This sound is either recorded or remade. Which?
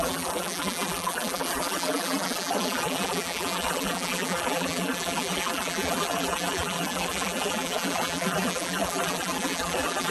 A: remade